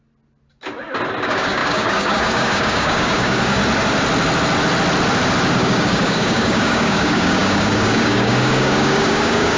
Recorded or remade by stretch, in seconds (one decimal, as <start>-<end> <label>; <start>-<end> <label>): 0.0-1.2 recorded; 1.2-3.6 remade; 3.6-5.5 recorded; 5.5-9.6 remade